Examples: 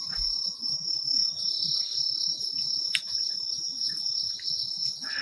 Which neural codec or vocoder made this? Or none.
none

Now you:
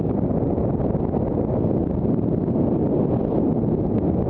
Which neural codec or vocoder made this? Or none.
none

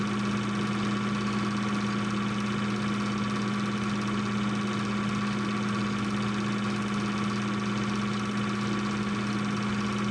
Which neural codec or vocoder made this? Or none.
none